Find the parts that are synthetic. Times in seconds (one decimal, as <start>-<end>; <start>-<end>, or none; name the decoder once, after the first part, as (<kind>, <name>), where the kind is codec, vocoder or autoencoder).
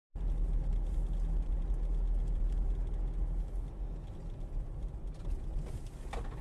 none